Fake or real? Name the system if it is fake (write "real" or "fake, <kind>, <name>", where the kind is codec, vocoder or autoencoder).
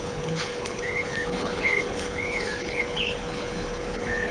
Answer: fake, codec, HILCodec